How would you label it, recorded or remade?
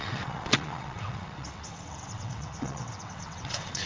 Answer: remade